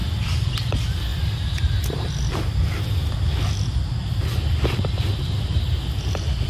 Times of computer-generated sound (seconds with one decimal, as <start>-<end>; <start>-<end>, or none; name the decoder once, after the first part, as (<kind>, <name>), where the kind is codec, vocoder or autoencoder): none